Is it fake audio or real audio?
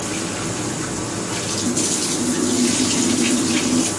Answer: real